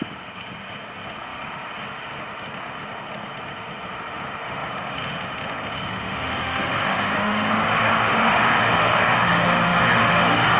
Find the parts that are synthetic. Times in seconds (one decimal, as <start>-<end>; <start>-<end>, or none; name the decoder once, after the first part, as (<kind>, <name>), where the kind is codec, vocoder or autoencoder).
0.0-10.6 (autoencoder, DAC-VAE)